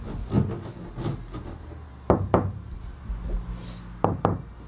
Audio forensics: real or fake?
real